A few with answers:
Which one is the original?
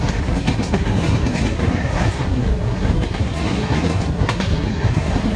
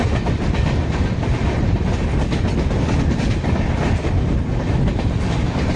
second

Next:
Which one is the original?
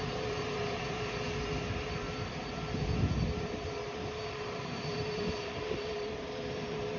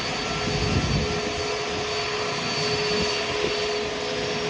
second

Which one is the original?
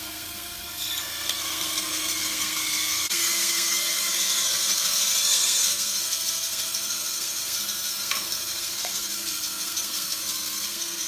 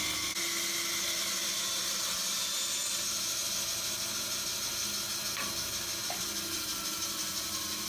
second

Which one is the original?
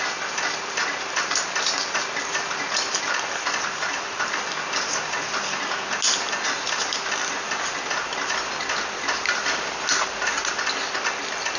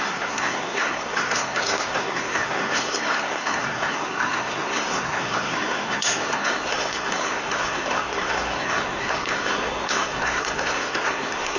first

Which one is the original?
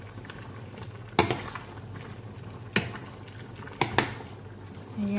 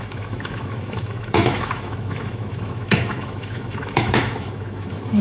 first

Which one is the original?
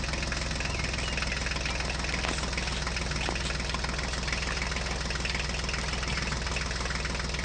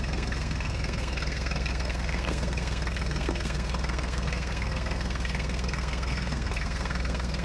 first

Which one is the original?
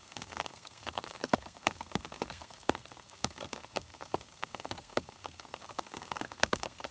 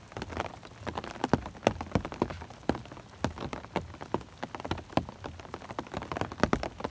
second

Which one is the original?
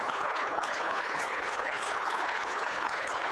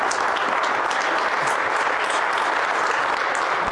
second